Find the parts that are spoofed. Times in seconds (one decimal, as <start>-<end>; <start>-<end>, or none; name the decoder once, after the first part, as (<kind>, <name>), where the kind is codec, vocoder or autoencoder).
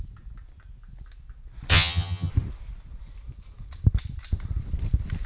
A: 1.7-2.3 (vocoder, HiFi-GAN)